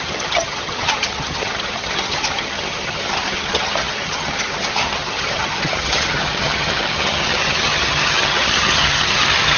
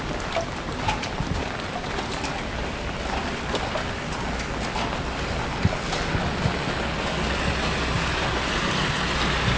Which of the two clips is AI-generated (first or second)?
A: first